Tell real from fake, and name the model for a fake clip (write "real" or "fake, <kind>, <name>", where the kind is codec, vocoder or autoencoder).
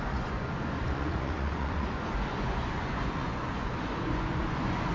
fake, vocoder, Vocos